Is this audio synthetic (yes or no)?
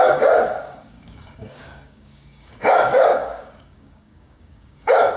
yes